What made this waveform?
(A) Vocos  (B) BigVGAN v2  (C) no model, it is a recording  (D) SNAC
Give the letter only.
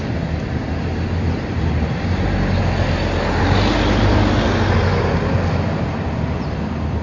C